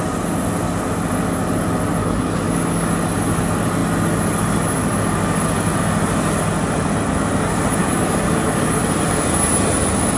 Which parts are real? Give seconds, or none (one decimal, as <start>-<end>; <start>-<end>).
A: 0.0-2.0; 3.0-7.8; 8.8-10.2